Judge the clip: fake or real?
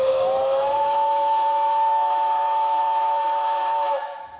fake